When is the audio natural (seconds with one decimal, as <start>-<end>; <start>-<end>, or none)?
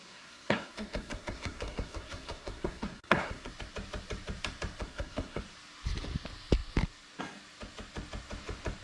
3.5-4.8; 5.4-8.8